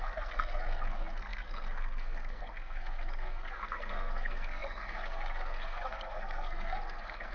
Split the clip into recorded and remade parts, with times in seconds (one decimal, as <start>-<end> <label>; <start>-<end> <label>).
0.0-7.3 remade